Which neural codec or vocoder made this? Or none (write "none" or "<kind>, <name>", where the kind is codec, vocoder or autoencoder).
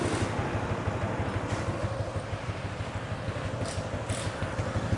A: none